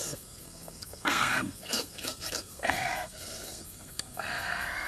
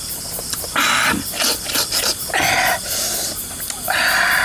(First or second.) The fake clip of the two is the first